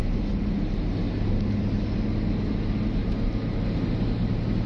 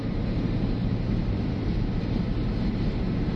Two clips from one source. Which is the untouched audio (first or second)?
first